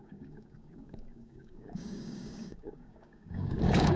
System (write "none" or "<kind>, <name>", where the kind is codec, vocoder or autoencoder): codec, DAC